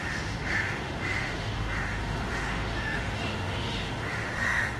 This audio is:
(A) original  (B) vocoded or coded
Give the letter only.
B